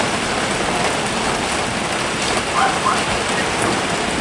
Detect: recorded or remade recorded